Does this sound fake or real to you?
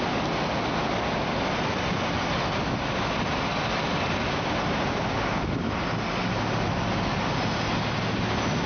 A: real